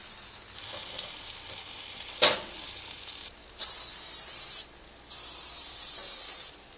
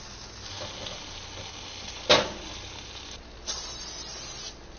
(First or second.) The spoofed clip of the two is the first